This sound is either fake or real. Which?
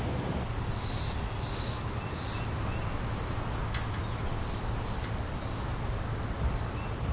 real